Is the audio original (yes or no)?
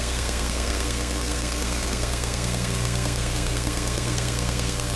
no